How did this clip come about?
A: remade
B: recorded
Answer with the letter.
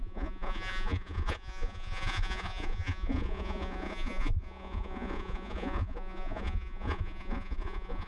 A